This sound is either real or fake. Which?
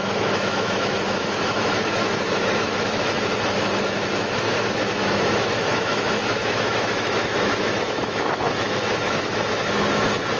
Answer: fake